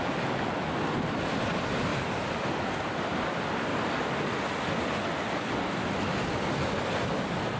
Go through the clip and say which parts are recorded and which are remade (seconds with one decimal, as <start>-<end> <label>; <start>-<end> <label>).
0.0-7.6 recorded

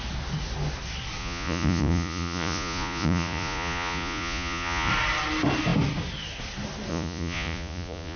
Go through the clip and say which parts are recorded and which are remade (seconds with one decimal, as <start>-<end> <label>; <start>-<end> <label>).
0.0-1.2 recorded; 1.2-4.9 remade; 4.9-6.9 recorded; 6.9-8.2 remade

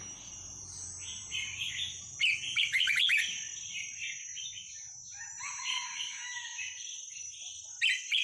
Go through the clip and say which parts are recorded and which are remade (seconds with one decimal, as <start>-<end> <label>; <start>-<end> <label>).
0.0-0.5 recorded; 0.5-1.7 remade; 1.7-3.5 recorded; 3.5-7.7 remade; 7.7-8.2 recorded

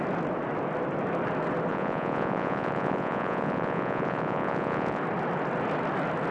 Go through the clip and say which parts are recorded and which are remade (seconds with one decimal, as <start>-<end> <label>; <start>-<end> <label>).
0.0-1.7 recorded; 1.7-5.0 remade; 5.0-6.3 recorded

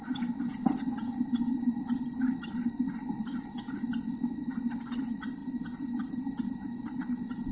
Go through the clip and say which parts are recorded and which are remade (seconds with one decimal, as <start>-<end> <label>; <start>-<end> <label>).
0.0-5.4 recorded; 5.4-6.9 remade; 6.9-7.5 recorded

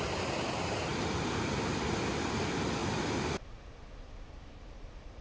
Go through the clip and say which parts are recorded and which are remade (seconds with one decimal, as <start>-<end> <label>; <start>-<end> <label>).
0.0-5.2 recorded

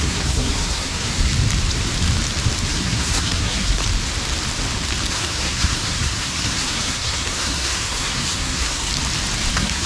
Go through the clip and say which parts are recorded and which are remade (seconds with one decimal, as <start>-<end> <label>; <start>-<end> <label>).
0.0-1.3 remade; 1.3-2.7 recorded; 2.7-3.8 remade; 3.8-5.1 recorded; 5.1-8.9 remade; 8.9-9.5 recorded; 9.5-9.9 remade

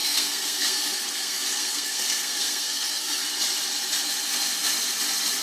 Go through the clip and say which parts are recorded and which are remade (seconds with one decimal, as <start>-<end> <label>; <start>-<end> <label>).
0.0-3.2 remade; 3.2-5.4 recorded